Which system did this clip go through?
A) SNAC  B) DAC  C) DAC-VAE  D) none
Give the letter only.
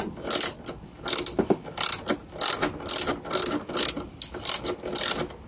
D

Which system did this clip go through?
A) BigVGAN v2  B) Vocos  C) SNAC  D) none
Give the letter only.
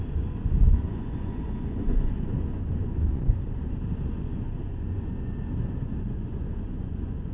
B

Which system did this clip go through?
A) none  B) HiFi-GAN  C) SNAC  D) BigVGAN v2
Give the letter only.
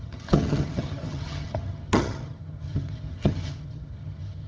B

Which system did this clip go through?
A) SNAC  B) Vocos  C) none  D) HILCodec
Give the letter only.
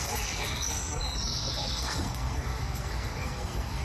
A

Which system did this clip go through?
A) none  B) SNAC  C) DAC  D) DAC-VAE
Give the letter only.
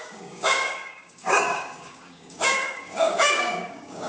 C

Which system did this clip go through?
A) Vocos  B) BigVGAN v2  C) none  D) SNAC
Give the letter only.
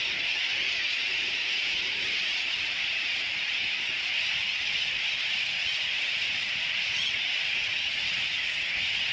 A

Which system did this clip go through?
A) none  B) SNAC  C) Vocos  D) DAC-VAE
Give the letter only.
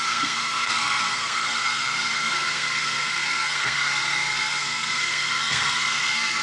B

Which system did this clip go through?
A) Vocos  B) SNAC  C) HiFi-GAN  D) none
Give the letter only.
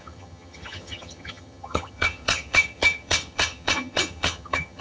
C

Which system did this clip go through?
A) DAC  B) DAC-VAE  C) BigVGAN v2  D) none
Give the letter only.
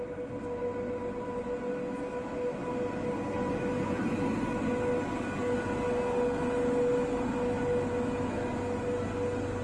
D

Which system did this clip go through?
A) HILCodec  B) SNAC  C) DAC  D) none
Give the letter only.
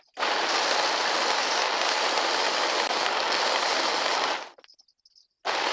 D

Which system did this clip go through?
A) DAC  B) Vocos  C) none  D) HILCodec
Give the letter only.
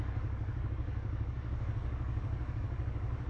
A